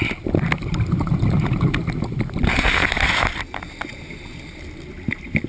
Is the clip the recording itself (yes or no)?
yes